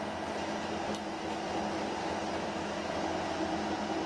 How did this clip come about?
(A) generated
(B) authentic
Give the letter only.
B